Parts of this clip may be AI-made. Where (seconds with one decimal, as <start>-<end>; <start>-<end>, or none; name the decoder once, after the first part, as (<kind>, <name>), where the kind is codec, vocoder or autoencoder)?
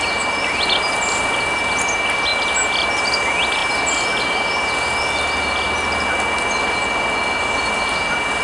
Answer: none